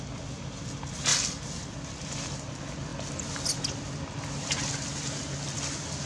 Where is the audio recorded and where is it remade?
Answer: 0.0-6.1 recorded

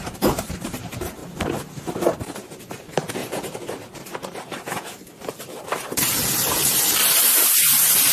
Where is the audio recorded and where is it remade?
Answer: 0.0-8.1 remade

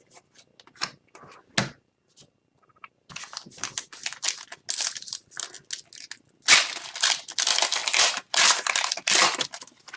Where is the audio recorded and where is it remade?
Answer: 0.0-1.6 recorded; 1.6-3.2 remade; 3.2-7.8 recorded; 7.8-9.5 remade; 9.5-10.0 recorded

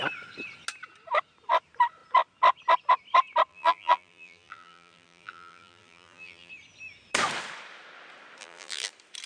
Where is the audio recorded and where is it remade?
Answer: 0.0-3.5 recorded; 3.5-6.5 remade; 6.5-8.4 recorded; 8.4-8.9 remade; 8.9-9.3 recorded

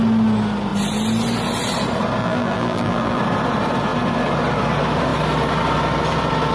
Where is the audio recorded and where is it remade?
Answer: 0.0-2.2 recorded; 2.2-3.2 remade; 3.2-6.5 recorded

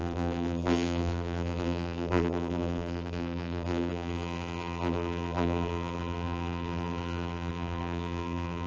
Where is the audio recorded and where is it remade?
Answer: 0.0-8.7 remade

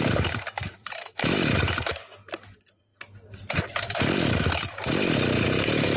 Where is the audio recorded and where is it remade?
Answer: 0.0-2.9 remade; 2.9-3.6 recorded; 3.6-6.0 remade